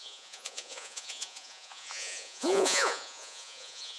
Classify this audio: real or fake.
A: fake